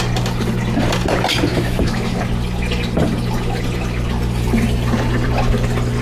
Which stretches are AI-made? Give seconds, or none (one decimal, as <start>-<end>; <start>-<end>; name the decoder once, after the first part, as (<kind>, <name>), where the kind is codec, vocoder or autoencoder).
1.5-2.2 (autoencoder, DAC-VAE)